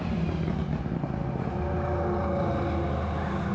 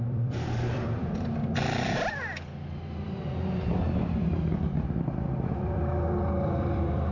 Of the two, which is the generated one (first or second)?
second